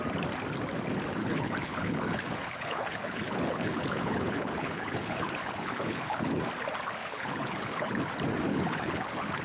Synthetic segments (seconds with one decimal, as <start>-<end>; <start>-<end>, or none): 1.2-6.4; 7.0-8.0; 8.5-9.4